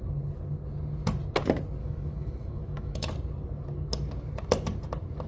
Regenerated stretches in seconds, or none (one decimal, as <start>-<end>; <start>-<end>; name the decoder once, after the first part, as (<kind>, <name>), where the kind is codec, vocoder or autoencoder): 1.8-3.1 (autoencoder, DAC-VAE)